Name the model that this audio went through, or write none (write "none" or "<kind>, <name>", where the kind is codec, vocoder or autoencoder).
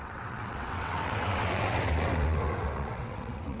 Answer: vocoder, WaveNeXt